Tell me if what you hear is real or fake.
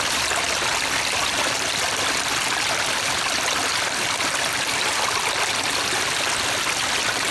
real